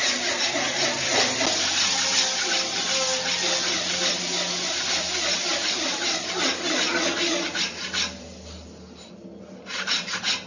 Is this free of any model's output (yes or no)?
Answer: yes